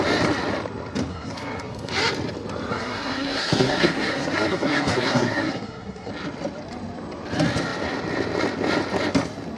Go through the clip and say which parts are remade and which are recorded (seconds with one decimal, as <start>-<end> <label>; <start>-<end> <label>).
0.0-1.1 recorded; 1.1-1.9 remade; 1.9-2.7 recorded; 2.7-6.1 remade; 6.1-9.6 recorded